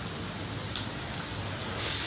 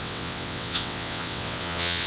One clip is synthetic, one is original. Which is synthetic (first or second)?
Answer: second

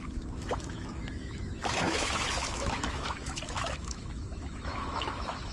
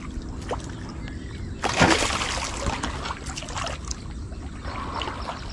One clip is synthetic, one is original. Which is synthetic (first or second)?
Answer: first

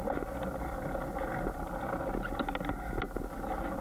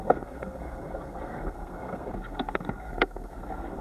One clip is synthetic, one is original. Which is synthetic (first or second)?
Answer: second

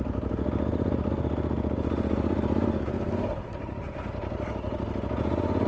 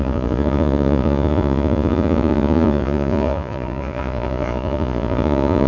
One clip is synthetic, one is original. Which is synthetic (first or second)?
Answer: second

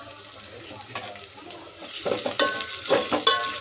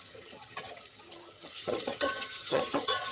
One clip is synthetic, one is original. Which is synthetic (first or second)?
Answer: second